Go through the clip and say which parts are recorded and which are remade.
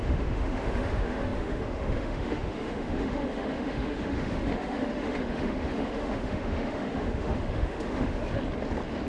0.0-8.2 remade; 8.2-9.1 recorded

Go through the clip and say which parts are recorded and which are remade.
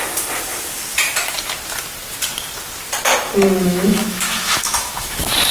0.0-3.6 recorded; 3.6-5.5 remade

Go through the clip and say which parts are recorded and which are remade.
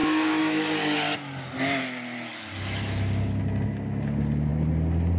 0.0-5.2 recorded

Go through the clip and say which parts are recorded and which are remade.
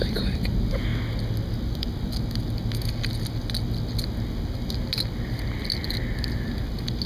0.0-7.1 recorded